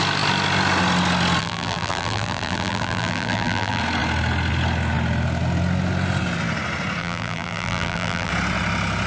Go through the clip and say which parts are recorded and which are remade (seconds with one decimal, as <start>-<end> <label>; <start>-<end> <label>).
0.0-1.4 recorded; 1.4-3.8 remade; 3.8-7.0 recorded; 7.0-8.3 remade; 8.3-9.1 recorded